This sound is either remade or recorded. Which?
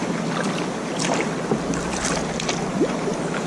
recorded